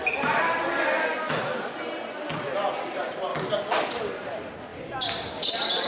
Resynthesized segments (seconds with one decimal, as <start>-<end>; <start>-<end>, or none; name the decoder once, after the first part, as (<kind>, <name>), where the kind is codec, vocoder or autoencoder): none